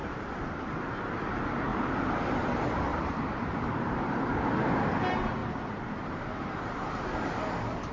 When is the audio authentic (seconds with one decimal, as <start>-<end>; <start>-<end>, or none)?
0.9-2.9; 4.6-5.4; 6.5-7.9